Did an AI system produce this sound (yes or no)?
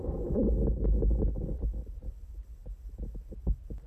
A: no